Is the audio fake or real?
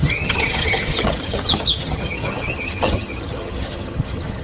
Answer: fake